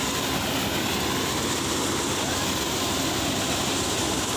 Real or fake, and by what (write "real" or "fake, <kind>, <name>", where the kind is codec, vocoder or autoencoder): real